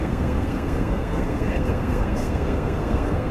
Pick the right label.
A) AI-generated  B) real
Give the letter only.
A